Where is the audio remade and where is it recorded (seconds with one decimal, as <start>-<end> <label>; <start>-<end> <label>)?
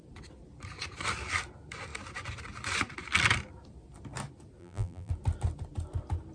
0.0-4.6 recorded; 4.6-5.1 remade; 5.1-6.3 recorded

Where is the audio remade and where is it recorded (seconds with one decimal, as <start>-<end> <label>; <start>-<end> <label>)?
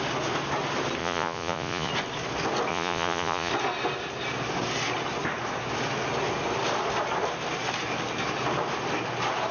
0.0-1.0 recorded; 1.0-1.9 remade; 1.9-2.7 recorded; 2.7-3.5 remade; 3.5-9.5 recorded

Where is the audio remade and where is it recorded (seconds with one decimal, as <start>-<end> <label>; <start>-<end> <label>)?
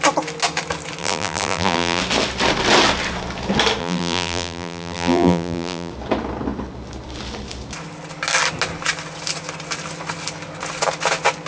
0.0-1.0 recorded; 1.0-2.0 remade; 2.0-3.8 recorded; 3.8-5.9 remade; 5.9-11.5 recorded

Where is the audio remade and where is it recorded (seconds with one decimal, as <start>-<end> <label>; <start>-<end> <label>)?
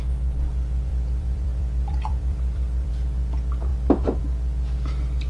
0.0-0.9 recorded; 0.9-2.9 remade; 2.9-3.7 recorded; 3.7-4.2 remade; 4.2-5.3 recorded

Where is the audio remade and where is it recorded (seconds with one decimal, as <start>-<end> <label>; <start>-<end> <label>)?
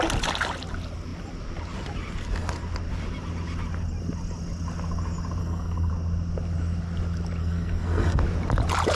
0.0-5.4 recorded; 5.4-5.9 remade; 5.9-7.4 recorded; 7.4-8.2 remade; 8.2-9.0 recorded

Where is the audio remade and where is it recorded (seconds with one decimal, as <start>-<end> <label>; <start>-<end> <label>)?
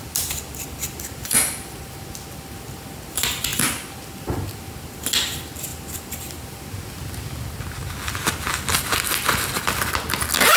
0.0-10.6 recorded